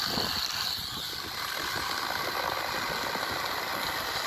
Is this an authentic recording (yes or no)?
yes